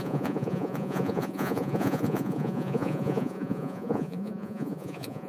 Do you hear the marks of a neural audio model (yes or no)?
yes